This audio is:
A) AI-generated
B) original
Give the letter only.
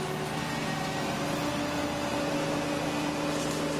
B